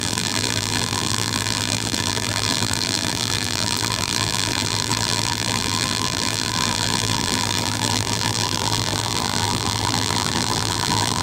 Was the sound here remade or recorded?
remade